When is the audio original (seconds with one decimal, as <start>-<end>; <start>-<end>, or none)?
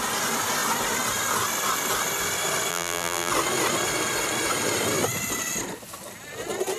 0.0-2.7; 3.3-6.8